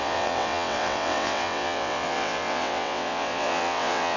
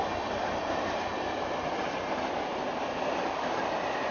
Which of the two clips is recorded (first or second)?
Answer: second